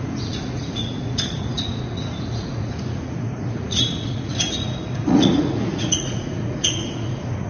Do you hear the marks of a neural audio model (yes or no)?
yes